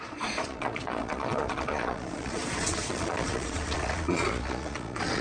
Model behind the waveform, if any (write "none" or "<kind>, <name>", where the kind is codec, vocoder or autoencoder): vocoder, Vocos